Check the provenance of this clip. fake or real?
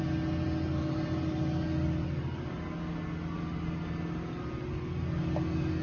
real